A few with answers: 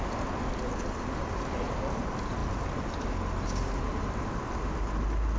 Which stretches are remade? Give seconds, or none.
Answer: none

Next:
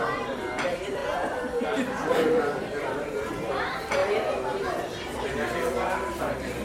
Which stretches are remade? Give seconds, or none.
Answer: 0.0-4.0 (vocoder, BigVGAN v2); 4.6-6.6

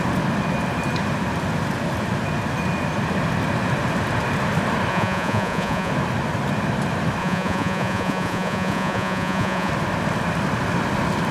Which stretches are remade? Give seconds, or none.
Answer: 4.9-5.9 (vocoder, Vocos); 7.2-9.7

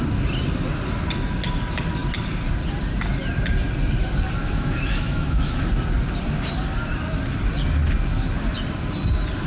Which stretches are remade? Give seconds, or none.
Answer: 4.4-5.6 (autoencoder, DAC-VAE)